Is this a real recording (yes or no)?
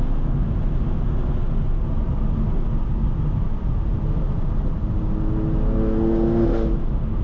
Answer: yes